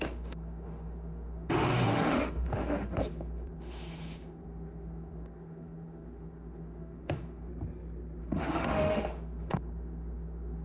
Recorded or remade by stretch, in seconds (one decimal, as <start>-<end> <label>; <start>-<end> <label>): 0.0-7.5 remade; 7.5-8.2 recorded; 8.2-10.6 remade